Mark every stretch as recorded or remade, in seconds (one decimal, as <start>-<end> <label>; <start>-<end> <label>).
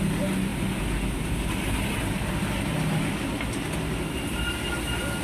0.0-5.2 recorded